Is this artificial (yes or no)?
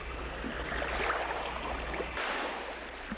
no